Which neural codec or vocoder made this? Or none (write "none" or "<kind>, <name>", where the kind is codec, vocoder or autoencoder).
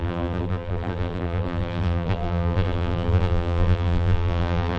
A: vocoder, BigVGAN v2